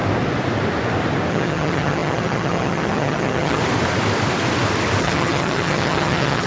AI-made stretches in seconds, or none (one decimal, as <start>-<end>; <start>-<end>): 1.3-3.6; 5.0-6.5